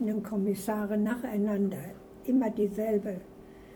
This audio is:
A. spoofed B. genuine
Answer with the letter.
A